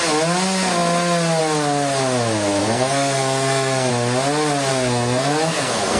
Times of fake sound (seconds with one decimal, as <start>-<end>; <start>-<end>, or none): 2.6-3.9; 4.7-6.0